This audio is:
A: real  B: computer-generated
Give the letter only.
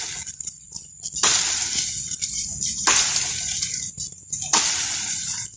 A